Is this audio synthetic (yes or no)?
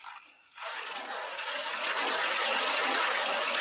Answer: yes